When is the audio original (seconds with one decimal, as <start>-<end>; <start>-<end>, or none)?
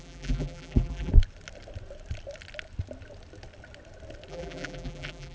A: 1.1-4.3